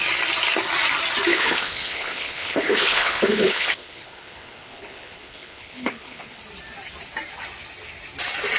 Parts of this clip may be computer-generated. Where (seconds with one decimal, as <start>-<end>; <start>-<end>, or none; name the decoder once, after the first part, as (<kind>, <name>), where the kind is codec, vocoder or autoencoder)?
1.3-6.4 (codec, HILCodec)